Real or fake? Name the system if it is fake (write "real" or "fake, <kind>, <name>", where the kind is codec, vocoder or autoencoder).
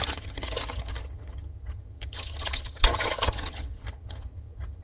fake, vocoder, HiFi-GAN